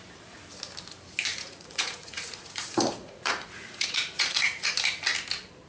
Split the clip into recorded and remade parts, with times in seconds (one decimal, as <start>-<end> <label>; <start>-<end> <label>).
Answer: 0.0-1.3 recorded; 1.3-4.7 remade; 4.7-5.7 recorded